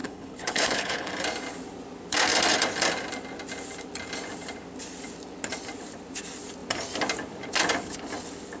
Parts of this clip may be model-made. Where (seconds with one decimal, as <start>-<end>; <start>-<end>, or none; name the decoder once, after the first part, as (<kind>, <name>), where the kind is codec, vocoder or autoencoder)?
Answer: 0.0-1.1 (codec, HILCodec)